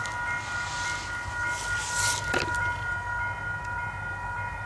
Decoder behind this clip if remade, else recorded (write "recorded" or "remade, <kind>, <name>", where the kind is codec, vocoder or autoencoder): recorded